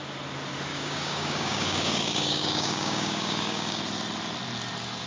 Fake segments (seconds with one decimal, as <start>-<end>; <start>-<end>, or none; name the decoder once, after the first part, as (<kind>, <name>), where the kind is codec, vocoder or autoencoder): 0.7-3.8 (codec, DAC)